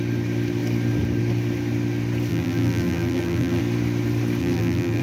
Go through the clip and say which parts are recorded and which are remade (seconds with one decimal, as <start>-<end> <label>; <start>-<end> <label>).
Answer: 0.0-2.3 recorded; 2.3-3.6 remade; 3.6-4.4 recorded; 4.4-5.0 remade